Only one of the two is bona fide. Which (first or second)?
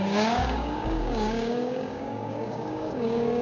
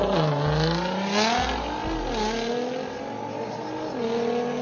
second